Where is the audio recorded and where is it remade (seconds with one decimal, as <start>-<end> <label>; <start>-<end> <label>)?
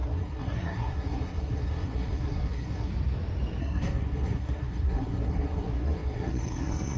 0.0-2.9 remade; 2.9-3.6 recorded; 3.6-7.0 remade